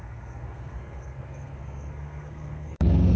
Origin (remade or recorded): remade